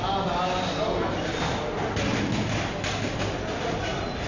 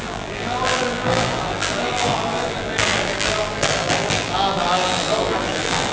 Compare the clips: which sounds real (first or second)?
first